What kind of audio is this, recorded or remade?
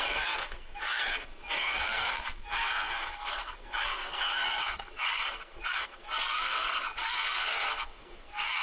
remade